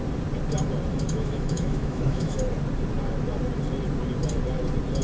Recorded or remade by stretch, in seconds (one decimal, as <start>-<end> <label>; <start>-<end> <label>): 0.0-0.9 recorded; 0.9-2.4 remade; 2.4-5.0 recorded